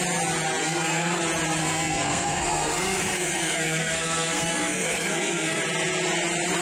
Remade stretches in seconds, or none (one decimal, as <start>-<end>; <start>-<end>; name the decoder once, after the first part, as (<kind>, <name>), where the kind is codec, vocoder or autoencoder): 0.6-1.2 (codec, SNAC); 1.6-5.6